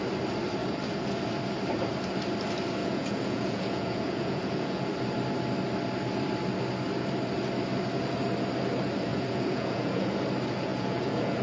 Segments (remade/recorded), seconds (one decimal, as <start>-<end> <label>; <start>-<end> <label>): 0.0-2.8 recorded; 2.8-4.9 remade; 4.9-9.1 recorded; 9.1-10.2 remade; 10.2-10.7 recorded; 10.7-11.4 remade